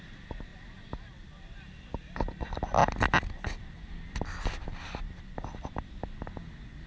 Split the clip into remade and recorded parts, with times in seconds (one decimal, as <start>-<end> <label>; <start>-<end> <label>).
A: 0.0-6.9 recorded